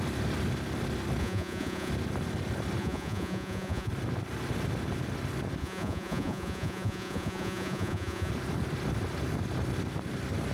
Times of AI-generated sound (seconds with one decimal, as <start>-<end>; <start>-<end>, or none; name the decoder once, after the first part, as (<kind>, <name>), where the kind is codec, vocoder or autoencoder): 1.2-1.9 (vocoder, Vocos); 2.8-3.9; 5.6-8.3